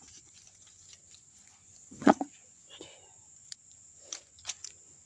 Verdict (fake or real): fake